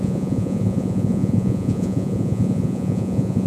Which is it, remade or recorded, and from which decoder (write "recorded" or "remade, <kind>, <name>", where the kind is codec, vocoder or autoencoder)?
remade, vocoder, Vocos